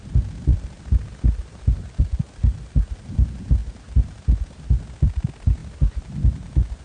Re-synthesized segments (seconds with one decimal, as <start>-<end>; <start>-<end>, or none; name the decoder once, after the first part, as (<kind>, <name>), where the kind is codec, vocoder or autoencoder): none